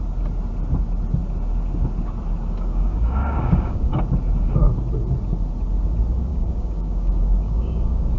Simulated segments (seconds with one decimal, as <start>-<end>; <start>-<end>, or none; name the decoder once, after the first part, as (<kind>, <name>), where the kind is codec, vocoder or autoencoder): 2.7-3.9 (codec, DAC); 6.3-8.2